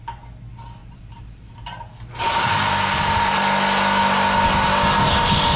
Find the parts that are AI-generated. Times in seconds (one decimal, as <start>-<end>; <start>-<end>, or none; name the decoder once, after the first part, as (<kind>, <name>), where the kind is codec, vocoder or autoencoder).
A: 0.8-3.4 (vocoder, BigVGAN v2)